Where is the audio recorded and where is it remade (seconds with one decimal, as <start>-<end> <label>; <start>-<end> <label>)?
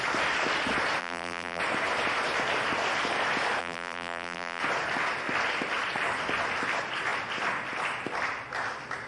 0.0-1.0 recorded; 1.0-1.6 remade; 1.6-3.6 recorded; 3.6-4.6 remade; 4.6-9.1 recorded